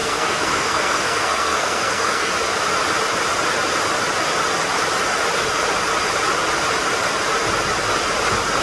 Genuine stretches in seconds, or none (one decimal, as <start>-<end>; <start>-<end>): 2.3-8.6